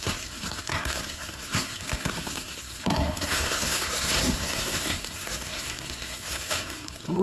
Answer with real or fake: fake